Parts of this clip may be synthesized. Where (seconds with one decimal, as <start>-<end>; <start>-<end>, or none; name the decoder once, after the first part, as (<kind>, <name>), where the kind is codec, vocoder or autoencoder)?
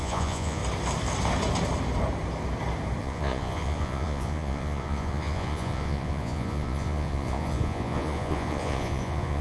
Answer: 0.0-0.6 (vocoder, Vocos); 3.0-9.4